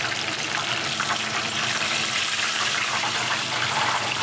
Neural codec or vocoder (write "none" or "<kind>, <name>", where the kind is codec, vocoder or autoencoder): vocoder, BigVGAN v2